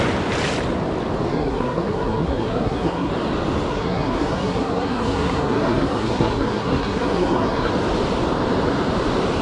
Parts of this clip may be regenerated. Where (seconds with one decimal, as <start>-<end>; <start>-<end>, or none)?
1.3-3.1; 3.7-7.7